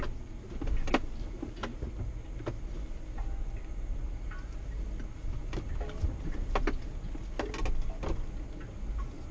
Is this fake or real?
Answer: real